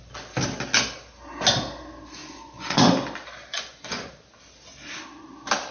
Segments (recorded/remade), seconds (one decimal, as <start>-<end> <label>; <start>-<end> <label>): 0.0-2.2 recorded; 2.2-2.8 remade; 2.8-3.5 recorded; 3.5-4.1 remade; 4.1-5.7 recorded